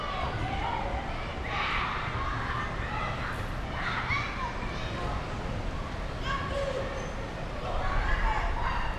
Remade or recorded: recorded